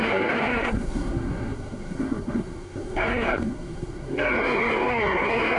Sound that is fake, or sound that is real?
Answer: fake